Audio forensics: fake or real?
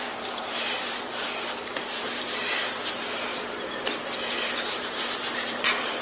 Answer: fake